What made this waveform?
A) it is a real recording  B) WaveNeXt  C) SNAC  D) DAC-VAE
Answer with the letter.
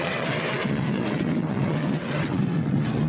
B